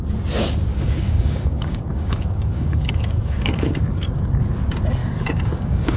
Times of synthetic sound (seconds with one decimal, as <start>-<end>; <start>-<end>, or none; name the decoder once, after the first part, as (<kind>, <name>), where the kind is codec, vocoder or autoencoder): 0.7-4.3 (codec, DAC); 5.0-6.0